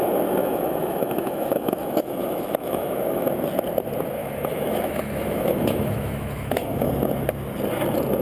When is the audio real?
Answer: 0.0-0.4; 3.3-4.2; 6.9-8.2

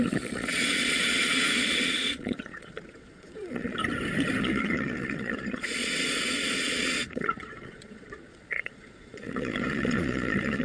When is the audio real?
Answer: 3.8-4.4